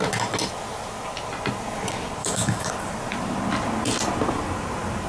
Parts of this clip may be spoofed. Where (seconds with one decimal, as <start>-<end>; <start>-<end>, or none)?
2.2-2.7